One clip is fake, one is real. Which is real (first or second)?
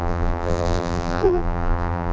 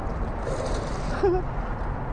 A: second